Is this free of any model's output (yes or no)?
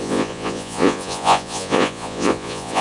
no